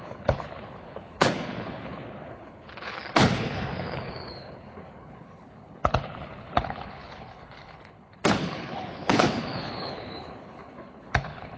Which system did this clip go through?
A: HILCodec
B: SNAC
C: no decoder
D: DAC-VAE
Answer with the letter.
A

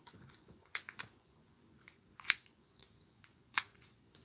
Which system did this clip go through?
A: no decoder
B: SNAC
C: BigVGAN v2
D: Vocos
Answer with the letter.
D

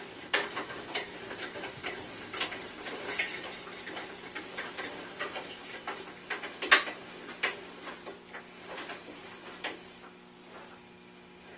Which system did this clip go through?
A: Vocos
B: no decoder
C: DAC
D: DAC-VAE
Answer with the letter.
B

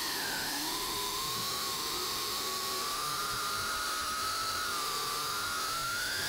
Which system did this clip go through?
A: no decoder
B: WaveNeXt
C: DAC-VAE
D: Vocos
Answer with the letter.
C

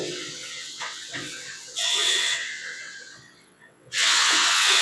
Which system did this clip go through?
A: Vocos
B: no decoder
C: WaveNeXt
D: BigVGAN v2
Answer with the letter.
C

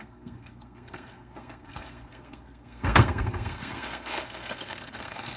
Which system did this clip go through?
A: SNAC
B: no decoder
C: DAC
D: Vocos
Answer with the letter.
A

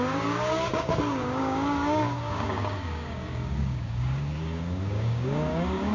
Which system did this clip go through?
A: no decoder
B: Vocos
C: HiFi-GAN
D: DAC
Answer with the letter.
D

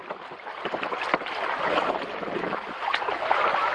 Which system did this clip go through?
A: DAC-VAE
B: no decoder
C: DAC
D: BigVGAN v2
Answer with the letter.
D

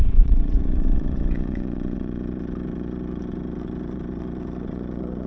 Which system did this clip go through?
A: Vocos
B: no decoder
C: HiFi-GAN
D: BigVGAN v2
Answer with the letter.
A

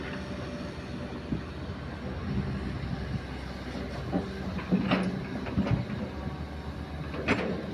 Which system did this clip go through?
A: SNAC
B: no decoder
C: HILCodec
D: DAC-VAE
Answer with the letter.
B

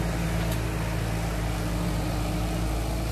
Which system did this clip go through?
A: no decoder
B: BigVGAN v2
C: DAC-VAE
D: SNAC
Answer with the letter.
B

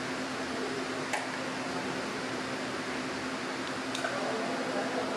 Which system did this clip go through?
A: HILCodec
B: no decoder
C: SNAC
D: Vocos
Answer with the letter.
B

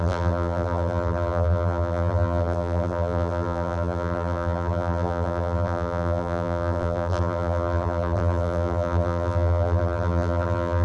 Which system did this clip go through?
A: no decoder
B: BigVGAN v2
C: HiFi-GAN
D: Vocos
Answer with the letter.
B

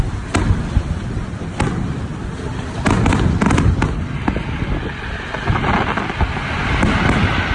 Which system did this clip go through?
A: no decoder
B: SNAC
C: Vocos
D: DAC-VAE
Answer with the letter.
A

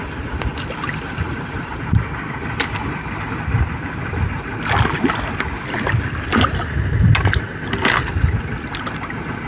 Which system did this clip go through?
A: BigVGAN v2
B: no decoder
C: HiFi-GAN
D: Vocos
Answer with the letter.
B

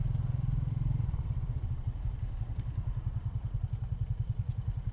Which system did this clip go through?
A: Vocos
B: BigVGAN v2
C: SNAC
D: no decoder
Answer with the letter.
D